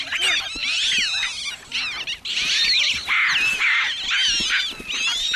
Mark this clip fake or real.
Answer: real